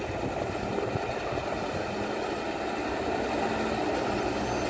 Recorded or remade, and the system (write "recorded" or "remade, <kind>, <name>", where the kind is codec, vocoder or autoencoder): recorded